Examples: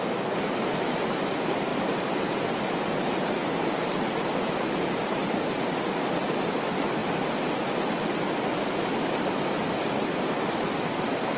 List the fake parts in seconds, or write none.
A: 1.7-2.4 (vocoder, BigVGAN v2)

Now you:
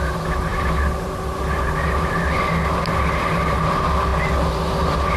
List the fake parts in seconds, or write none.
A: none

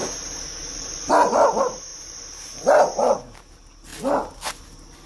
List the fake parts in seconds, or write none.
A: 0.0-1.1 (vocoder, BigVGAN v2); 1.9-3.4

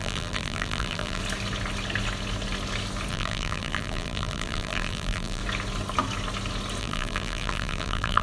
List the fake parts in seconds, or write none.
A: 0.0-1.2 (vocoder, BigVGAN v2); 3.1-5.4; 6.8-8.2

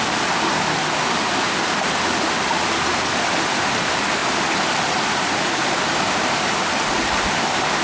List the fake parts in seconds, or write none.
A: 0.0-7.8 (vocoder, BigVGAN v2)

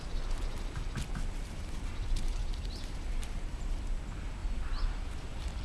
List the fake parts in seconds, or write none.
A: 2.4-3.6 (vocoder, BigVGAN v2); 4.4-5.6